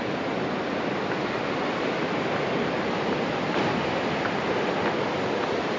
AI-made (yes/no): no